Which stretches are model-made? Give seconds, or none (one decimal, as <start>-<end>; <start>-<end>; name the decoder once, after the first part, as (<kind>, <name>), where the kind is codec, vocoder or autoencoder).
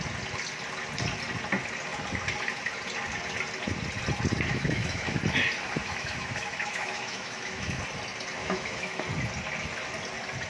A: 4.5-5.2 (autoencoder, DAC-VAE); 5.8-7.8; 8.4-9.0